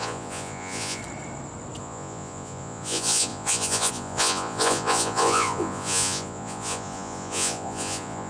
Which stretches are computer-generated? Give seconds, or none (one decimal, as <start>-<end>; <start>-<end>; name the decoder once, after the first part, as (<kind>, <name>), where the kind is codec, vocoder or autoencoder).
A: 0.0-1.0 (vocoder, Vocos); 1.8-8.3